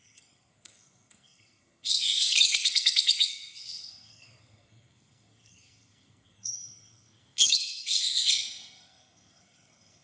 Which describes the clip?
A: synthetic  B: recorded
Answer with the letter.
A